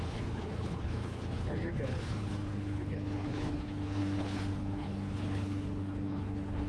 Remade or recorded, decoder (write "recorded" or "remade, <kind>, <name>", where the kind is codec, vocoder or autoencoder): remade, codec, HILCodec